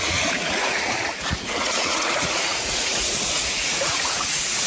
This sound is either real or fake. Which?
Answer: fake